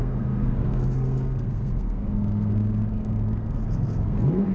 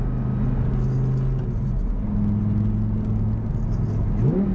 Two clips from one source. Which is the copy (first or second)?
first